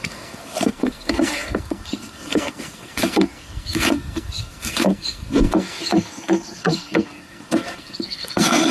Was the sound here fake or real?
fake